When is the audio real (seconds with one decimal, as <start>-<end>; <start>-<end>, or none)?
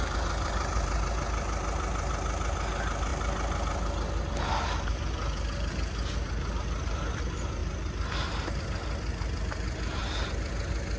0.0-11.0